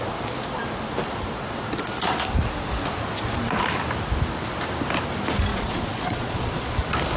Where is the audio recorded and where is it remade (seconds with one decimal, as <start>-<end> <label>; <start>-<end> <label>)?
0.0-5.5 recorded; 5.5-6.7 remade; 6.7-7.2 recorded